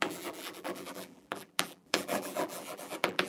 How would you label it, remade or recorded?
remade